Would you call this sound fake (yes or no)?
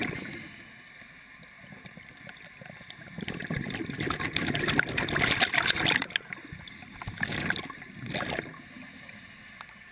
no